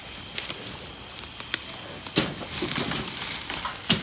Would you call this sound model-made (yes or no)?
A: no